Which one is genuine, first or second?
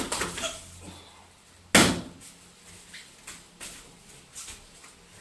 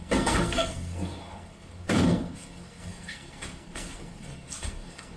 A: first